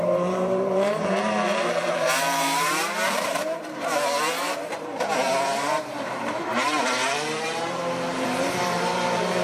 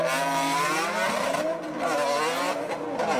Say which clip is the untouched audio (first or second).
second